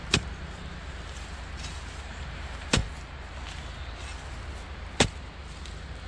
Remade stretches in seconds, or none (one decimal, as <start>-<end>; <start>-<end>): 0.0-2.8